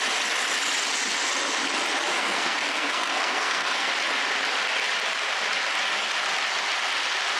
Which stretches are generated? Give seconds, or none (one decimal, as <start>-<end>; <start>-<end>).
2.1-3.9